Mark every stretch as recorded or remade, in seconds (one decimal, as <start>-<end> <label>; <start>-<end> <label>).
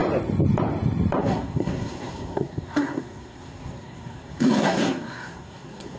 0.0-1.2 recorded; 1.2-6.0 remade